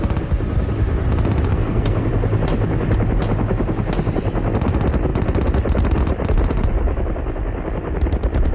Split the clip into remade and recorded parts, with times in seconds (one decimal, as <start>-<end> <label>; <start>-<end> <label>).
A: 0.0-1.5 recorded; 1.5-2.1 remade; 2.1-8.5 recorded